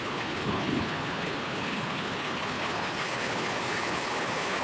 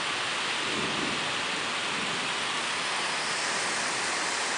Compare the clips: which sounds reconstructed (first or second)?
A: first